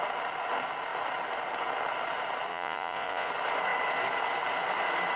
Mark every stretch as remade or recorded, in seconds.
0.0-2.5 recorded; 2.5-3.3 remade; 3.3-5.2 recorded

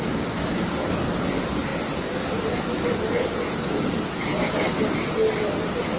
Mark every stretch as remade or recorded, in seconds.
0.0-6.0 recorded

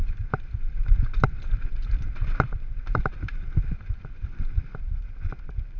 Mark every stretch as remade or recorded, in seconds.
0.0-5.8 remade

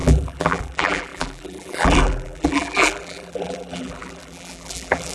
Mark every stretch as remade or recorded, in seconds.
0.0-5.1 remade

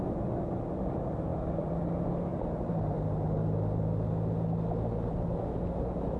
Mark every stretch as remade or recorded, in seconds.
0.0-1.3 recorded; 1.3-1.9 remade; 1.9-6.2 recorded